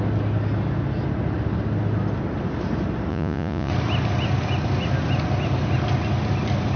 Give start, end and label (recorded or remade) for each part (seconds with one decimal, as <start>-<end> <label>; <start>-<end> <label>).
0.0-3.1 recorded; 3.1-3.7 remade; 3.7-6.8 recorded